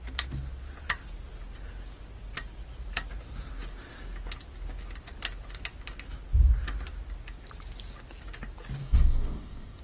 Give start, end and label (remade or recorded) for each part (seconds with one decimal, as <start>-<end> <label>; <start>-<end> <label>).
0.0-8.8 recorded; 8.8-9.8 remade